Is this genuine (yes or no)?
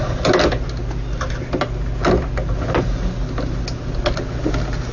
yes